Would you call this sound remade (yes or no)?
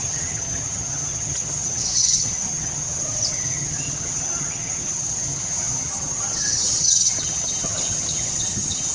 yes